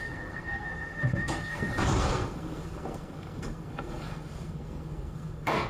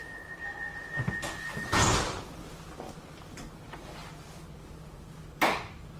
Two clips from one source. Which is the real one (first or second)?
second